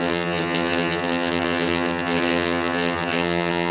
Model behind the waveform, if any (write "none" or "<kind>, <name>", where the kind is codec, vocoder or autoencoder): vocoder, HiFi-GAN